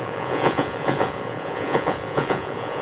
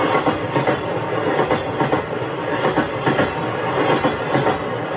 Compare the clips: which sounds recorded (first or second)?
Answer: second